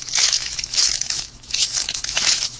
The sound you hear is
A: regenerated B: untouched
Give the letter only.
A